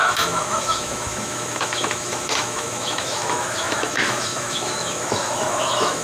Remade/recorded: remade